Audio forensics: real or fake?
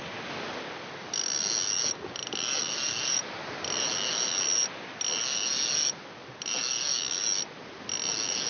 real